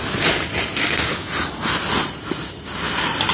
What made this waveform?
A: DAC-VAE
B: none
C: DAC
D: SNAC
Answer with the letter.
B